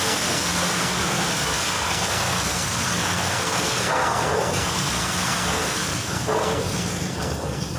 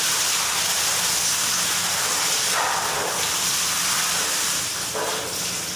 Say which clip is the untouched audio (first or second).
second